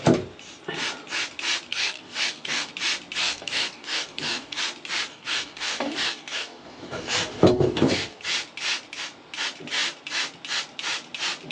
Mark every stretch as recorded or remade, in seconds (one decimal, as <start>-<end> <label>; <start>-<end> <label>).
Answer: 0.0-1.7 recorded; 1.7-2.7 remade; 2.7-3.2 recorded; 3.2-4.6 remade; 4.6-5.1 recorded; 5.1-8.2 remade; 8.2-11.5 recorded

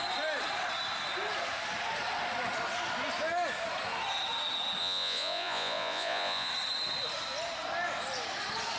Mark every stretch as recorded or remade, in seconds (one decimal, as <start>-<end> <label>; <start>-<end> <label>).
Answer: 0.0-4.8 recorded; 4.8-6.5 remade; 6.5-8.8 recorded

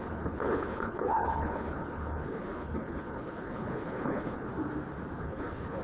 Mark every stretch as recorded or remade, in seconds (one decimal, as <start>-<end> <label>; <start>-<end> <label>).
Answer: 0.0-4.5 remade; 4.5-5.2 recorded; 5.2-5.8 remade

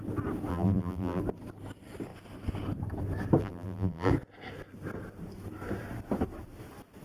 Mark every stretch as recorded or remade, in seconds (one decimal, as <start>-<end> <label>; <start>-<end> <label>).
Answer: 0.0-0.5 recorded; 0.5-1.2 remade; 1.2-3.4 recorded; 3.4-4.1 remade; 4.1-7.0 recorded

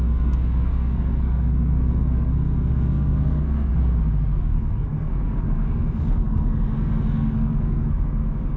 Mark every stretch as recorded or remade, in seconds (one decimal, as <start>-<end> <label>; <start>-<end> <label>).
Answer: 0.0-3.7 remade; 3.7-4.4 recorded; 4.4-8.6 remade

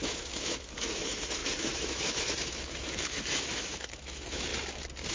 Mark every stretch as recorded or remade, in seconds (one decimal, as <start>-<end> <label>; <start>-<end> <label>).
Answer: 0.0-4.5 remade; 4.5-5.1 recorded

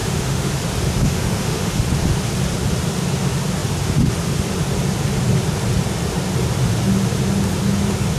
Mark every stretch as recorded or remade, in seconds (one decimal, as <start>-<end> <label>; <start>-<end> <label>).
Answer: 0.0-0.5 remade; 0.5-1.0 recorded; 1.0-1.8 remade; 1.8-8.2 recorded